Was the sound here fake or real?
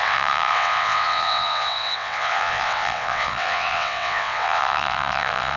fake